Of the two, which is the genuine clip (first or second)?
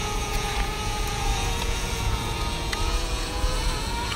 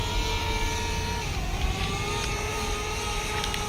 second